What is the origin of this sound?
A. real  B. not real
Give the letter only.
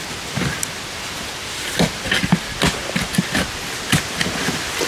A